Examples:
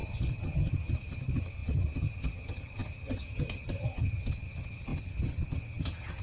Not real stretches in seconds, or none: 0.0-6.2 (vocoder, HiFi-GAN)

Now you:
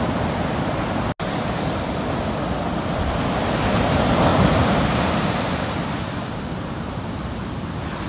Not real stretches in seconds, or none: 4.3-7.6 (vocoder, BigVGAN v2)

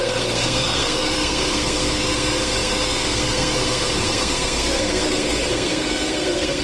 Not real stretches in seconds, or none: 0.0-6.6 (codec, SNAC)

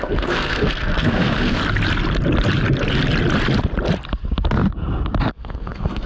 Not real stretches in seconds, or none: 0.0-1.6 (codec, SNAC); 5.3-6.1